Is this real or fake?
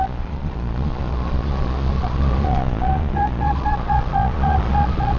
fake